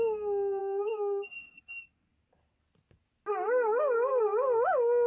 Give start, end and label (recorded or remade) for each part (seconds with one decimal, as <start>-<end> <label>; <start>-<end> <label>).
0.0-0.6 recorded; 0.6-1.6 remade; 1.6-5.1 recorded